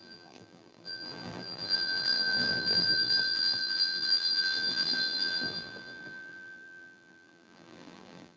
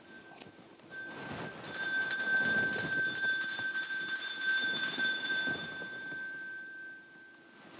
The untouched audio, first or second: second